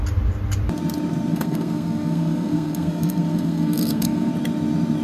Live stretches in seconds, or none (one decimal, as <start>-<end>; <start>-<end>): 0.0-1.3; 4.3-5.0